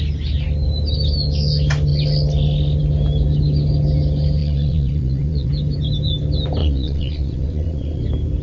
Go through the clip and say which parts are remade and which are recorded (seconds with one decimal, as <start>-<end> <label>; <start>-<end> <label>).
0.0-4.4 recorded; 4.4-5.5 remade; 5.5-6.6 recorded; 6.6-8.0 remade; 8.0-8.4 recorded